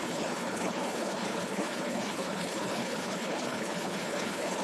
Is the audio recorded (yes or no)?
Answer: no